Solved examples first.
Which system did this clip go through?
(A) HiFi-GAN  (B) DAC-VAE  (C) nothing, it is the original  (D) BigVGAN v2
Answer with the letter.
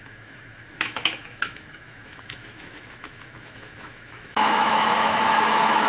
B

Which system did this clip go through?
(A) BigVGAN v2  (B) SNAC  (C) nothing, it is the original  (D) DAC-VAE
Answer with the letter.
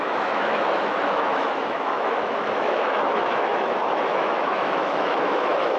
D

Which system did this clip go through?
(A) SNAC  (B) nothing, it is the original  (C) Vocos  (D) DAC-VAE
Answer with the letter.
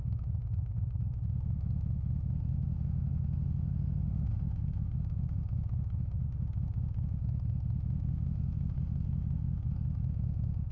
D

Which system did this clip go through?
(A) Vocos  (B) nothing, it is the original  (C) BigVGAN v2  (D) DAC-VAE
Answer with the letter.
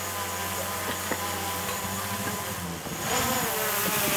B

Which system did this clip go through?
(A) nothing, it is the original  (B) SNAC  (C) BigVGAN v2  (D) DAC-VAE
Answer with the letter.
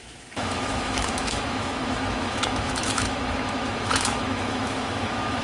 D